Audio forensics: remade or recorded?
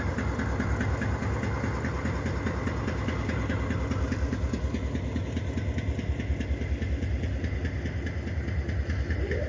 recorded